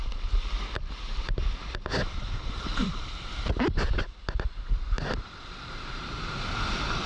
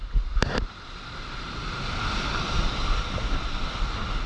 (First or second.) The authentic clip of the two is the second